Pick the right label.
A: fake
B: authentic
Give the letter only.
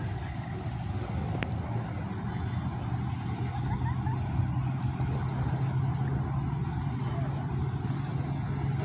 B